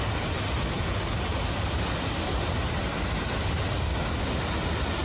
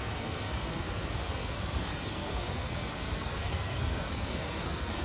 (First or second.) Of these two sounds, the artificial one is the second